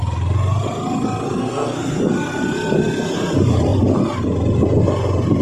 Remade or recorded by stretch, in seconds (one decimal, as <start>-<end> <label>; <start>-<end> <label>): 0.0-1.4 recorded; 1.4-2.0 remade; 2.0-5.4 recorded